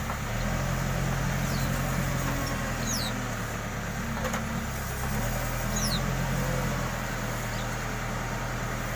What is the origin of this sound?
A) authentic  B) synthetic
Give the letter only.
A